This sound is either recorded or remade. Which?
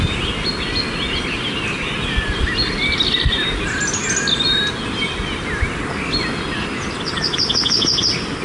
recorded